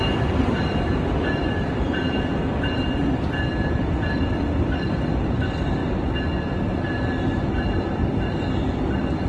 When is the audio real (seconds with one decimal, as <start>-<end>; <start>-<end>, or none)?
5.8-7.7